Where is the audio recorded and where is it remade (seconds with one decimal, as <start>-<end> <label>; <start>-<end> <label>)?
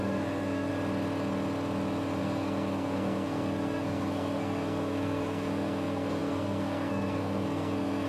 0.0-0.7 remade; 0.7-2.2 recorded; 2.2-8.1 remade